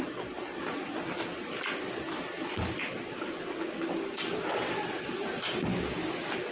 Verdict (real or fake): real